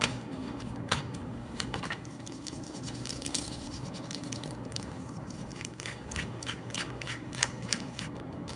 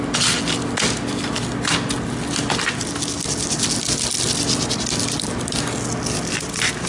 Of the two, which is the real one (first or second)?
second